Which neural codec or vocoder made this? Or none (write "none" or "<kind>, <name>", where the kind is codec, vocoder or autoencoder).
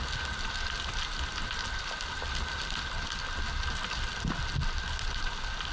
none